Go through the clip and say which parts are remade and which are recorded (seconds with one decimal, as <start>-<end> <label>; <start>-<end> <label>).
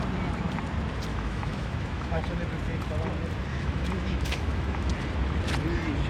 0.0-1.1 recorded; 1.1-2.2 remade; 2.2-3.5 recorded; 3.5-4.9 remade; 4.9-6.1 recorded